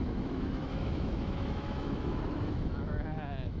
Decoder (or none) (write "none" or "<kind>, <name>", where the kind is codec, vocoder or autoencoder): autoencoder, DAC-VAE